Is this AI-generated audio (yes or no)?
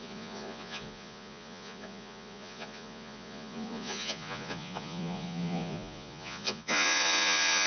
yes